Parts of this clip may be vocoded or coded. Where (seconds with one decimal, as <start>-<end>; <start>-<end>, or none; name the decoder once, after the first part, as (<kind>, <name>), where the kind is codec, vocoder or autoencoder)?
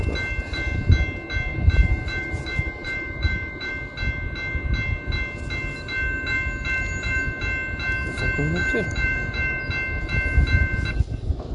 1.5-3.7 (vocoder, BigVGAN v2); 8.6-9.6